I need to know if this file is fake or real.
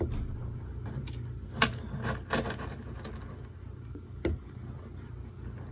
real